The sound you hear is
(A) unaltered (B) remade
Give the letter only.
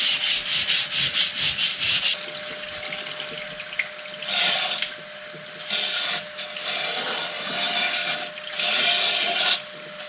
A